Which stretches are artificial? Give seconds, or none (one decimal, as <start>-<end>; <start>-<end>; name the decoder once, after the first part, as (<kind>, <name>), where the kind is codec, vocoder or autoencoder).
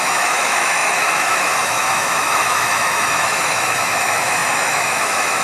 0.0-5.4 (autoencoder, DAC-VAE)